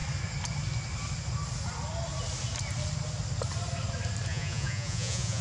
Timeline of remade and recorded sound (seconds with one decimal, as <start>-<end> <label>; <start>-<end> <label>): 0.0-4.3 recorded; 4.3-5.4 remade